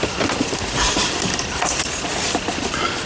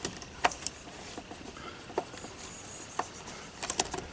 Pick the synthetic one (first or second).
second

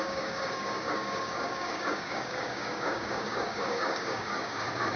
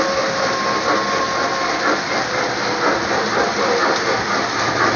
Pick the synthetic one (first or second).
first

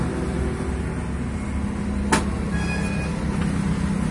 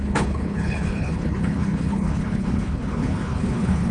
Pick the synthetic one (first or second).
second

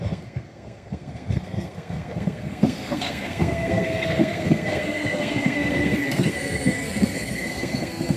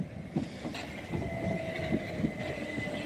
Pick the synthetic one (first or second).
first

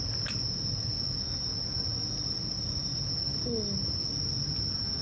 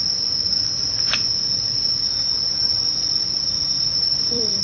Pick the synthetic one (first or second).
second